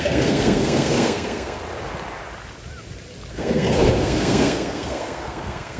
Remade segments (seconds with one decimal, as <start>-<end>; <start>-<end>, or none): 0.0-1.6; 3.3-5.8